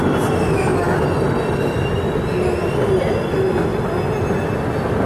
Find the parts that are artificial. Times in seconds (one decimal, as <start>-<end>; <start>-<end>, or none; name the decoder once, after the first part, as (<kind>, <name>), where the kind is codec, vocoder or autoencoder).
none